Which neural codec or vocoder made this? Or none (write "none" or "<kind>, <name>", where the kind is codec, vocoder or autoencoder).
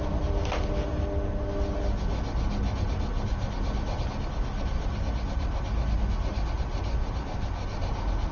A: none